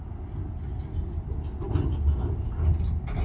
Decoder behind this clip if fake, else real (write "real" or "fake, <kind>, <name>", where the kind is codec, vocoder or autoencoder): real